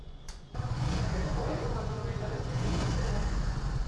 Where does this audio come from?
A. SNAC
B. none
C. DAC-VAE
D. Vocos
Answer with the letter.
D